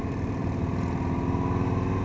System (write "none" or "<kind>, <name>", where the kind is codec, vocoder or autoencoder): none